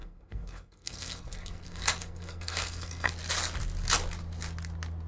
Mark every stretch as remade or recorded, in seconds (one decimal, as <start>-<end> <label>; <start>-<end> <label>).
0.0-3.1 remade; 3.1-5.1 recorded